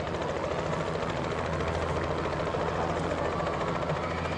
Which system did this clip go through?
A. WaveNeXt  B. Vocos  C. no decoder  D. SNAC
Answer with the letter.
C